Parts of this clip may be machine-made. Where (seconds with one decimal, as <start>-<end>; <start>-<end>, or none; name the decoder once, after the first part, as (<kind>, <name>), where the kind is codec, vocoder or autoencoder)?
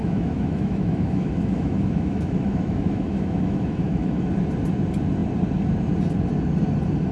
0.0-4.3 (autoencoder, DAC-VAE)